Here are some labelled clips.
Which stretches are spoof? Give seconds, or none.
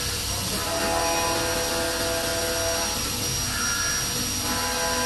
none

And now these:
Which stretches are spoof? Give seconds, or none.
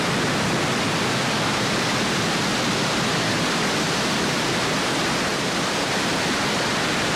5.3-5.9 (vocoder, BigVGAN v2)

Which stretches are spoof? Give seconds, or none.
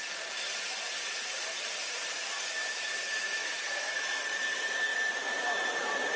0.0-6.2 (vocoder, BigVGAN v2)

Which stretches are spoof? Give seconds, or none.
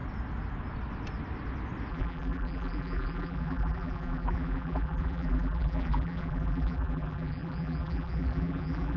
1.9-9.0 (vocoder, BigVGAN v2)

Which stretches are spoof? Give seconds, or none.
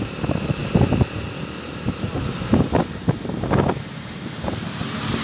0.0-0.6 (vocoder, BigVGAN v2); 1.6-2.1; 3.8-5.2